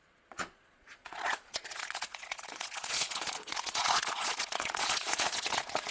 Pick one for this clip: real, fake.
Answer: fake